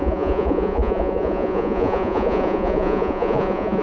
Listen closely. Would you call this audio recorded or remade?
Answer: remade